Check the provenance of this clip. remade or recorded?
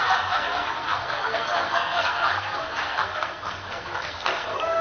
remade